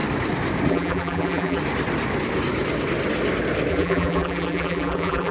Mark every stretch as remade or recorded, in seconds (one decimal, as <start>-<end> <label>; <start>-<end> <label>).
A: 0.0-0.7 recorded; 0.7-1.6 remade; 1.6-3.7 recorded; 3.7-5.3 remade